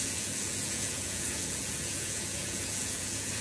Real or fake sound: fake